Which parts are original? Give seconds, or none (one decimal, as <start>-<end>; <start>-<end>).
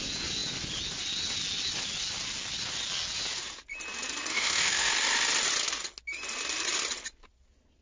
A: 0.0-4.3; 4.9-7.8